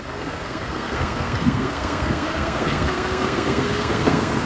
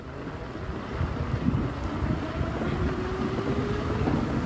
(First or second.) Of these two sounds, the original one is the second